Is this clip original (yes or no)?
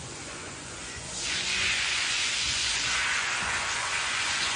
no